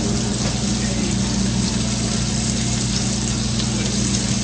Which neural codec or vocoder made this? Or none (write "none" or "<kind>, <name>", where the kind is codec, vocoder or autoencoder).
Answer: none